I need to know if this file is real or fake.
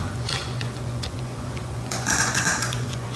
fake